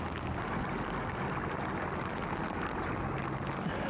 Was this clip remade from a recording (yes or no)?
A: no